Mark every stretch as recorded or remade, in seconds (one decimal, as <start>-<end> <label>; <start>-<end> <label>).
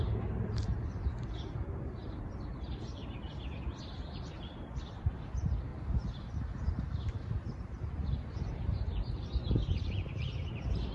0.0-3.0 remade; 3.0-3.8 recorded; 3.8-5.7 remade; 5.7-6.7 recorded; 6.7-10.9 remade